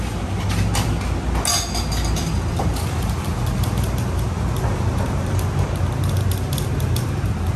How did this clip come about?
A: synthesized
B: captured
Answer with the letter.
B